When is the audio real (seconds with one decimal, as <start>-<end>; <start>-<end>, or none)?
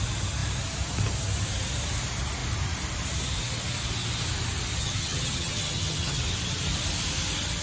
0.0-4.8; 6.2-7.6